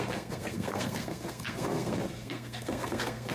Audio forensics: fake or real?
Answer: fake